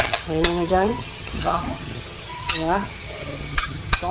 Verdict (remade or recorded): remade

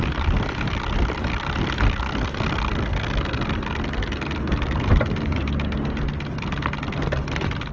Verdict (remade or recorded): recorded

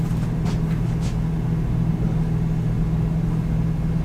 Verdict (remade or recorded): recorded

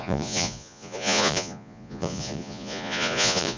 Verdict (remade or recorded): remade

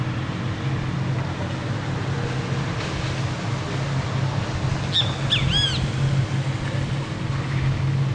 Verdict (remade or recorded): recorded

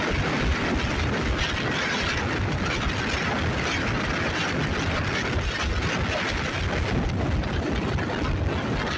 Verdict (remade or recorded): recorded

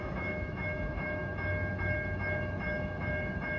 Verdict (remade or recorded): remade